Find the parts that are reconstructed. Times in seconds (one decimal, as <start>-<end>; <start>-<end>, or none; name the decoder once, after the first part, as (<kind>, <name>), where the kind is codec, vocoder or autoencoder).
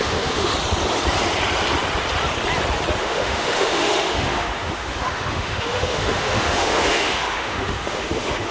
0.0-0.5 (autoencoder, DAC-VAE); 3.0-8.5